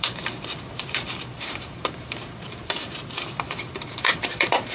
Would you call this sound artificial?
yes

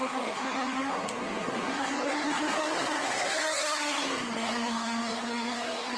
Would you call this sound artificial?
yes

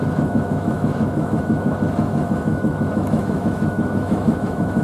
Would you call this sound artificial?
yes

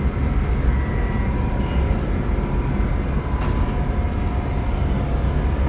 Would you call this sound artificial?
no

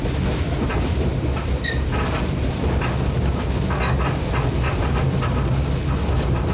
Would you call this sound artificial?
no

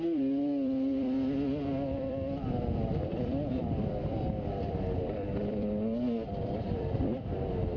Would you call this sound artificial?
yes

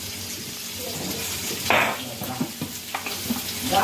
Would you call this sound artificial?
no